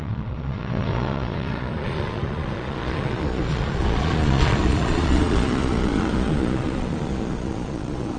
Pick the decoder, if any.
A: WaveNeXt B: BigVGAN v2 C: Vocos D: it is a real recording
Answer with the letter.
C